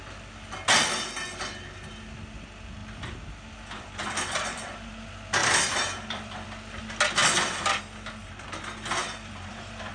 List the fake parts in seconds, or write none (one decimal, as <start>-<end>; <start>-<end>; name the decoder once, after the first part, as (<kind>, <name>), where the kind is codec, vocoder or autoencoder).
2.8-4.9 (vocoder, BigVGAN v2); 5.4-6.8; 7.2-8.1; 9.0-9.9